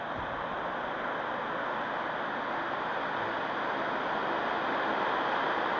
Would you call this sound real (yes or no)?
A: yes